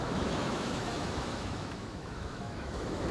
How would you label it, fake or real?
fake